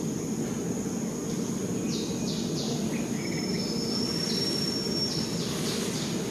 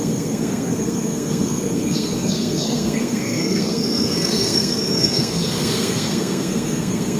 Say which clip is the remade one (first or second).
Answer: second